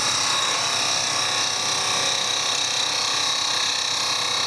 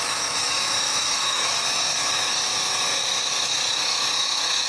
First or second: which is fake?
second